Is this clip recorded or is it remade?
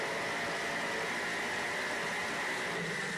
recorded